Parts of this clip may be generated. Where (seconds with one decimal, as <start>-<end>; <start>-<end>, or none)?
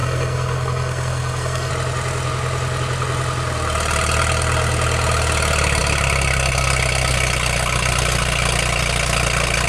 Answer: 0.0-1.7